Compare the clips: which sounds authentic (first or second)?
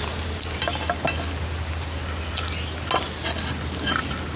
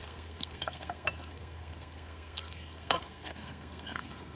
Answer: first